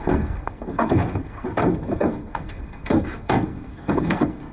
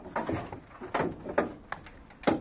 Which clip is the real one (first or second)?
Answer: second